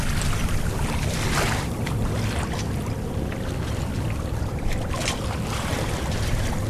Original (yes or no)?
yes